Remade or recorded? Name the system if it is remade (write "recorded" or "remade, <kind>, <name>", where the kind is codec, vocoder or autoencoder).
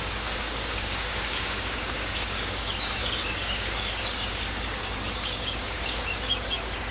remade, codec, DAC